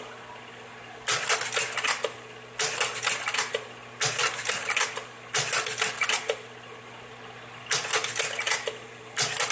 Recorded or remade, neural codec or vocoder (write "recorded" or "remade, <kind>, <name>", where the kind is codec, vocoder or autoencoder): recorded